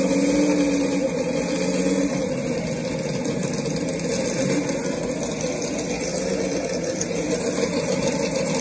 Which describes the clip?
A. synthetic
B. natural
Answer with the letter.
B